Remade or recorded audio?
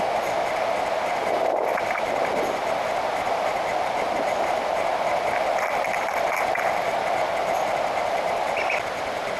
recorded